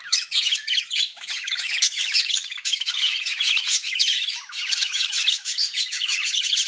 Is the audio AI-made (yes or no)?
yes